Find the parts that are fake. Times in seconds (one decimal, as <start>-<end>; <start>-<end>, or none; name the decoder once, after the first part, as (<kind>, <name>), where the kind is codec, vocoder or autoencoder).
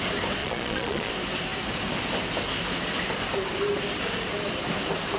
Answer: 0.4-1.1 (vocoder, Vocos)